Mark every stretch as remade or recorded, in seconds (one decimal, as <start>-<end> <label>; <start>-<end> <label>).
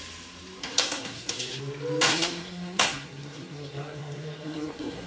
0.0-0.6 recorded; 0.6-1.6 remade; 1.6-2.1 recorded; 2.1-5.1 remade